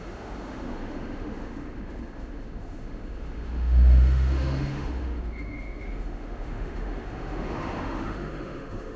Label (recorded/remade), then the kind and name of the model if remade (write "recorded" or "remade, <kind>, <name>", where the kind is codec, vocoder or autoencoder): remade, autoencoder, DAC-VAE